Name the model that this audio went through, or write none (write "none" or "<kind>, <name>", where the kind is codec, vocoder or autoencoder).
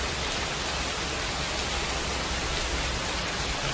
none